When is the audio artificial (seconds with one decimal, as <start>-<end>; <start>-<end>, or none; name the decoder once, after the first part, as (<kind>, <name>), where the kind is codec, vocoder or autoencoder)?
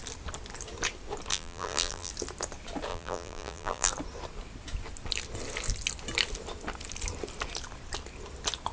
1.3-2.1 (vocoder, BigVGAN v2); 2.9-3.9